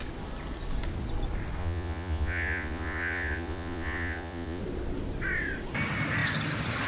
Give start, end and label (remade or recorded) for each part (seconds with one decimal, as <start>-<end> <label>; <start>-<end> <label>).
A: 0.0-1.6 recorded; 1.6-4.6 remade; 4.6-6.9 recorded